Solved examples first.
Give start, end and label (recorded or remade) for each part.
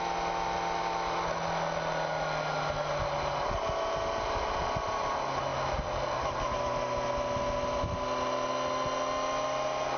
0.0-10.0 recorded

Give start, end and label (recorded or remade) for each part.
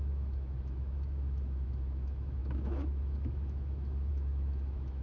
0.0-5.0 remade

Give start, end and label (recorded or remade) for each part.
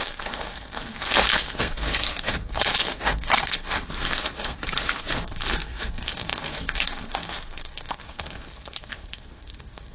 0.0-9.9 remade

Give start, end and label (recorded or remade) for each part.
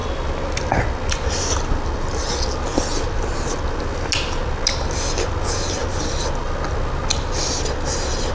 0.0-8.3 recorded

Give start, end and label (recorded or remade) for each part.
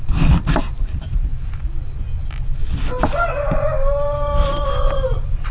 0.0-1.3 remade; 1.3-4.6 recorded; 4.6-5.5 remade